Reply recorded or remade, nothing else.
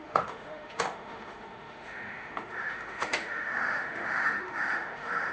remade